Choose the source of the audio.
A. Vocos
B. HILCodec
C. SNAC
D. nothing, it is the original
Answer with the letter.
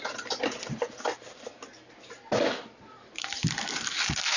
D